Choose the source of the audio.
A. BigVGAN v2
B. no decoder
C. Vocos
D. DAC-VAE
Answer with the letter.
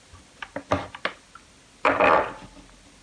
B